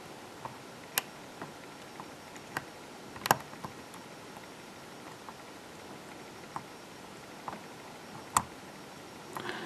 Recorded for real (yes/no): yes